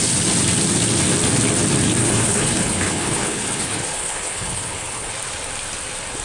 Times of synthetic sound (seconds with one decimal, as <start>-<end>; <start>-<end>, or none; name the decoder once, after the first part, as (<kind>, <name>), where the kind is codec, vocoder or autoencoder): 2.0-5.1 (codec, HILCodec)